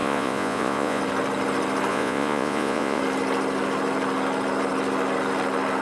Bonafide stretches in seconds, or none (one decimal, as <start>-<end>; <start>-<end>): 1.0-1.9; 3.0-5.8

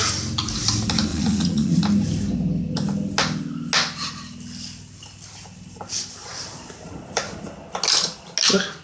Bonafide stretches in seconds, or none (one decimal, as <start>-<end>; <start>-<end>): 0.0-1.1; 1.8-8.8